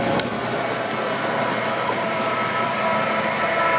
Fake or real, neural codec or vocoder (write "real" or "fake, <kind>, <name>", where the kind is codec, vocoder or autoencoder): fake, vocoder, BigVGAN v2